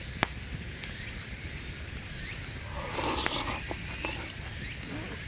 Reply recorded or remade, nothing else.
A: recorded